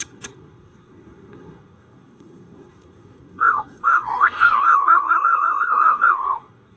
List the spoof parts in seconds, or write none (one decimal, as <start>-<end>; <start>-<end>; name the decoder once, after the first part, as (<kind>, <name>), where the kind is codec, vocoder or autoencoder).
0.0-6.8 (codec, SNAC)